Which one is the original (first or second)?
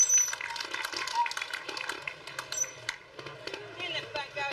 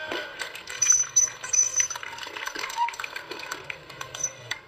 first